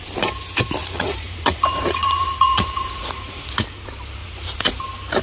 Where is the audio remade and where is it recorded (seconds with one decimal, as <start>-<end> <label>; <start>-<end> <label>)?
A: 0.0-0.8 recorded; 0.8-3.5 remade; 3.5-4.2 recorded; 4.2-4.8 remade; 4.8-5.2 recorded